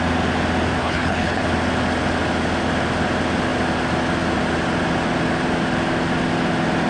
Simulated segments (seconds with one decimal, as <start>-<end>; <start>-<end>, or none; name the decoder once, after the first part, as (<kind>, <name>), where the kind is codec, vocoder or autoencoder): 0.8-1.4 (codec, HILCodec)